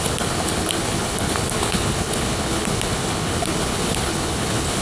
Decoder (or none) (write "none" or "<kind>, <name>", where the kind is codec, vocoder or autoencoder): codec, HILCodec